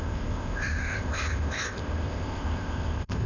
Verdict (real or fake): fake